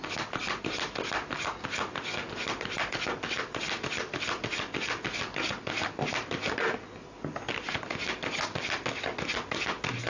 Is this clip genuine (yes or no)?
yes